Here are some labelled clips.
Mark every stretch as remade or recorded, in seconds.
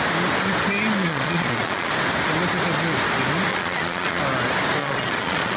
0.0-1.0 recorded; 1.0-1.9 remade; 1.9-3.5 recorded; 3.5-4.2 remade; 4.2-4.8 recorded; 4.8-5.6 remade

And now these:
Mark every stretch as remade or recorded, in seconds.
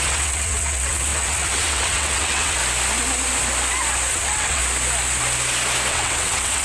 0.0-2.6 remade; 2.6-4.1 recorded; 4.1-4.6 remade; 4.6-5.9 recorded; 5.9-6.6 remade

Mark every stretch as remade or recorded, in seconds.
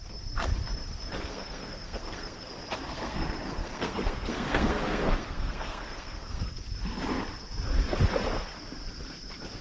0.0-1.1 recorded; 1.1-2.5 remade; 2.5-2.9 recorded; 2.9-6.6 remade; 6.6-9.6 recorded